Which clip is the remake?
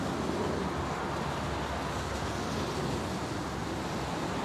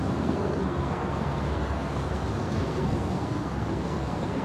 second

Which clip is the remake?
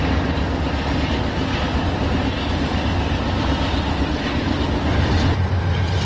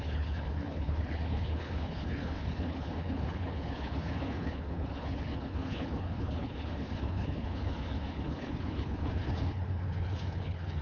second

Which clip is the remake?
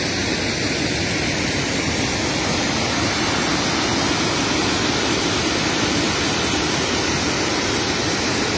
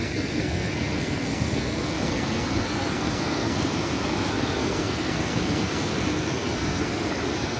second